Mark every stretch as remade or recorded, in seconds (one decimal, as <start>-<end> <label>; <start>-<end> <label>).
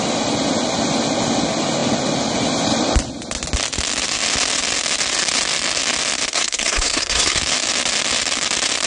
0.0-6.3 recorded; 6.3-7.4 remade; 7.4-8.9 recorded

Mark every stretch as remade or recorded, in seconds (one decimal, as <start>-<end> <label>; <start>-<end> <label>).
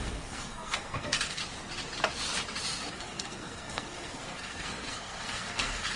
0.0-1.4 remade; 1.4-2.9 recorded; 2.9-6.0 remade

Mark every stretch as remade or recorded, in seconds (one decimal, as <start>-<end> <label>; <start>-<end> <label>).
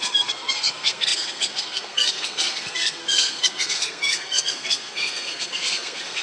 0.0-6.2 remade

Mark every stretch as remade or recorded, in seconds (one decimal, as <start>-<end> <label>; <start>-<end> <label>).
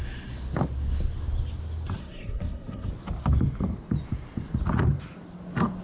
0.0-2.0 recorded; 2.0-2.9 remade; 2.9-5.8 recorded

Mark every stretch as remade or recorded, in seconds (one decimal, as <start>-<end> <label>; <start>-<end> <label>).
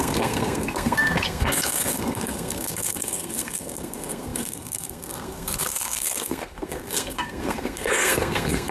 0.0-8.7 remade